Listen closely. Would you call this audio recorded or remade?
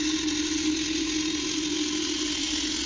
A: recorded